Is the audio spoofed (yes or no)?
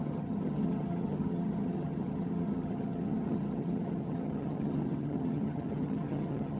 yes